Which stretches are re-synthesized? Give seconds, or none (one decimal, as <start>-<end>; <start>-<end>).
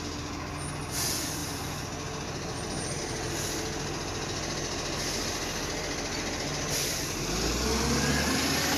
none